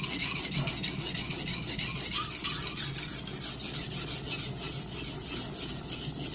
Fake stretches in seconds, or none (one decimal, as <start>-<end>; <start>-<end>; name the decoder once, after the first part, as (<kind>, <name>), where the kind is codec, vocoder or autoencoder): none

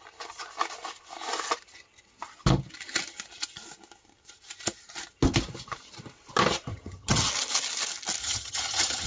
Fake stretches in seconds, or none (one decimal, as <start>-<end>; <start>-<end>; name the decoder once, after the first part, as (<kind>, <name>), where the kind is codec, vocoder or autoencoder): 6.7-7.3 (vocoder, HiFi-GAN); 8.2-9.1

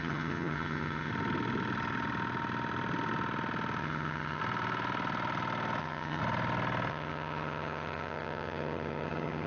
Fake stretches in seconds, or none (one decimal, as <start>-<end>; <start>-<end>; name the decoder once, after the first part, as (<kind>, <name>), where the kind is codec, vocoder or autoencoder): 0.0-1.1 (vocoder, HiFi-GAN); 3.8-4.4; 5.8-6.2; 6.9-9.5

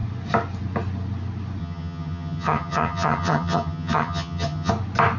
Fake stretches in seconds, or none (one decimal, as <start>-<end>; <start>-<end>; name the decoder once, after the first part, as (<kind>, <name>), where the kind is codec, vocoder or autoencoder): 1.6-4.7 (vocoder, HiFi-GAN)

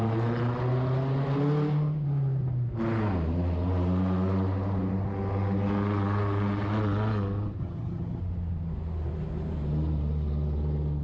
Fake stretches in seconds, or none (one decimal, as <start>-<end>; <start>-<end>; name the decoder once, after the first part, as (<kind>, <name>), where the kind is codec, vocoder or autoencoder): 7.6-8.2 (vocoder, HiFi-GAN)

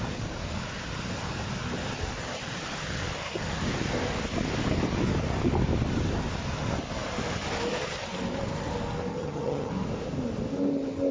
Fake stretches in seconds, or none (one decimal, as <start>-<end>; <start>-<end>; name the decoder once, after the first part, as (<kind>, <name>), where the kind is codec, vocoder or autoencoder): 9.1-9.7 (vocoder, HiFi-GAN)

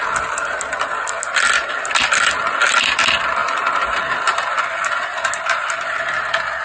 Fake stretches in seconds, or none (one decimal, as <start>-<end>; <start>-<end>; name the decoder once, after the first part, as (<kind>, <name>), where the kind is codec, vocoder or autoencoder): none

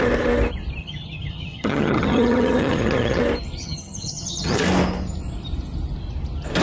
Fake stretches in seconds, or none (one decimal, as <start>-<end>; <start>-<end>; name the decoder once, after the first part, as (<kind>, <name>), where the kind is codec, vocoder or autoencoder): 0.8-3.2 (vocoder, HiFi-GAN); 3.6-4.6